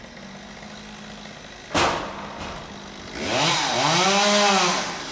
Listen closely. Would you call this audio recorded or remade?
recorded